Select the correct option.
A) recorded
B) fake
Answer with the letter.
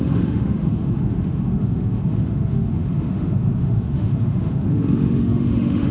B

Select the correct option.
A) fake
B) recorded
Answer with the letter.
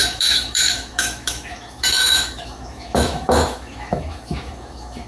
A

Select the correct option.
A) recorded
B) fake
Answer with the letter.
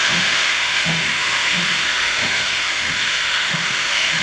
B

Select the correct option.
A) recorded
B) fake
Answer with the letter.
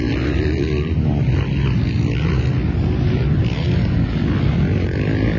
A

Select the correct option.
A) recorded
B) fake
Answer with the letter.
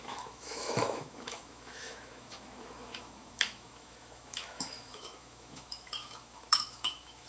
B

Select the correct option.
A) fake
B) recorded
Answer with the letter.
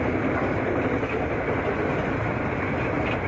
B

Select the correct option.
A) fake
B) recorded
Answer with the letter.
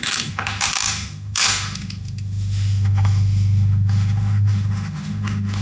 A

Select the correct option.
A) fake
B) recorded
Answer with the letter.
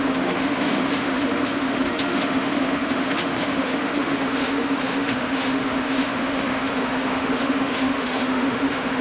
A